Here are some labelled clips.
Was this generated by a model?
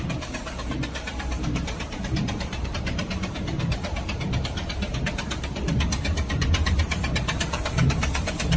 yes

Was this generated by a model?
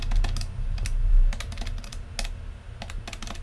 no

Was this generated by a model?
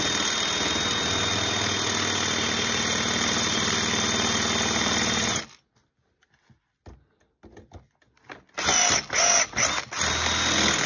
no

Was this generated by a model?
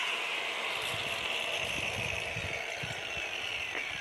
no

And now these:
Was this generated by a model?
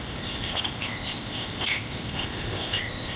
yes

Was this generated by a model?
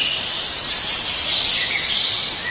no